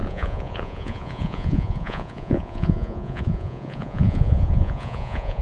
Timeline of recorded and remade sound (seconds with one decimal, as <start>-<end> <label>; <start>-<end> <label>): 0.0-5.4 remade